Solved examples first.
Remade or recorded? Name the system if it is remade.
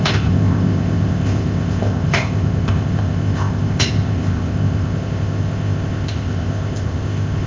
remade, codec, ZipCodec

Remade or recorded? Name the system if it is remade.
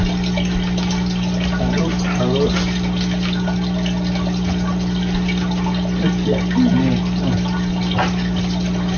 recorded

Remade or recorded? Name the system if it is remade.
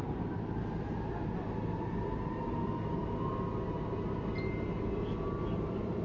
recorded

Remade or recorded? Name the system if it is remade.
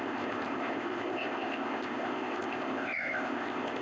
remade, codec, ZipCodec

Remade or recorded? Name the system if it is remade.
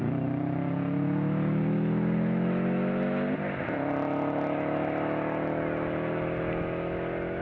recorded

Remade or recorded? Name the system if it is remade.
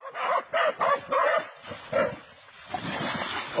recorded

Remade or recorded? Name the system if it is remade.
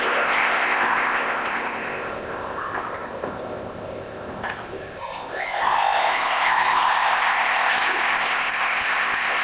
remade, codec, ZipCodec